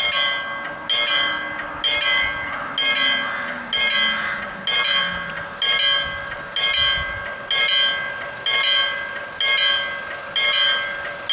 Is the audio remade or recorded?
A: recorded